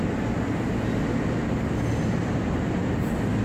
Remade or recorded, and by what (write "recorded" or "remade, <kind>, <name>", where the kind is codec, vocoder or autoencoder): recorded